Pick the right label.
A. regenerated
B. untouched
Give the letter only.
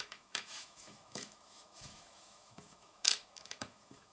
A